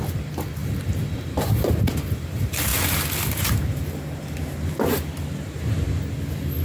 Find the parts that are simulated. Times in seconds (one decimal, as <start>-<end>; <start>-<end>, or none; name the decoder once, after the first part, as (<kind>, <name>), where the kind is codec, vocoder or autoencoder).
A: 0.6-1.7 (vocoder, BigVGAN v2); 2.7-6.1